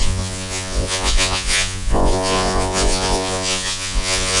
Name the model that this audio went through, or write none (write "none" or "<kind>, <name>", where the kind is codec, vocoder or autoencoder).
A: vocoder, Vocos